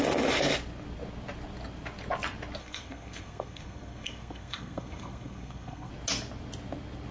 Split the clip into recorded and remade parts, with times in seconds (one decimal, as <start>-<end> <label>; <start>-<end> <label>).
0.0-2.6 recorded; 2.6-5.9 remade; 5.9-7.1 recorded